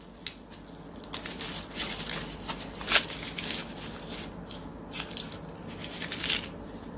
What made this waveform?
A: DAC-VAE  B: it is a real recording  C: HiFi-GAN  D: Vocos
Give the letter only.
B